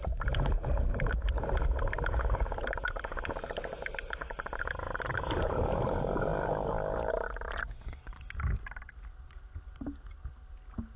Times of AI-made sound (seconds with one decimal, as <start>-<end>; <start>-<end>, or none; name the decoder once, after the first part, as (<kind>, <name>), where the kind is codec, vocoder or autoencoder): none